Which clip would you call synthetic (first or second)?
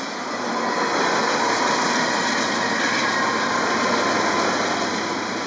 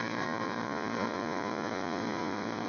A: second